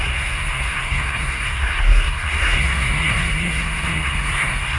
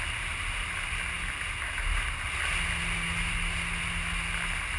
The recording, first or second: second